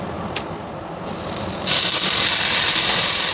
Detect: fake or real real